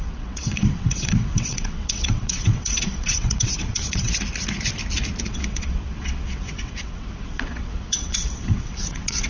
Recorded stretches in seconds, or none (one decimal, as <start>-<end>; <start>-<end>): 4.1-5.2